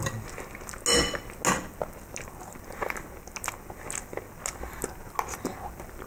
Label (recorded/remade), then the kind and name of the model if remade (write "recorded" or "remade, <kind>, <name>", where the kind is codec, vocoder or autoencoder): recorded